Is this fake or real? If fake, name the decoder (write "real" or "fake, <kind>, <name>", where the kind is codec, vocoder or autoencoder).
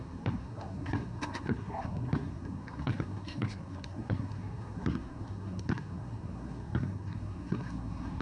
fake, codec, SNAC